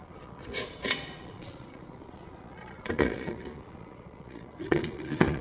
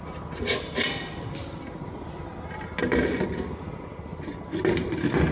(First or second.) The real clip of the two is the second